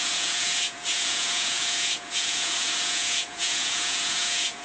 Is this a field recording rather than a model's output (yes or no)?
no